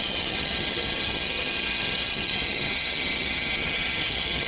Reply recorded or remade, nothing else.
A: remade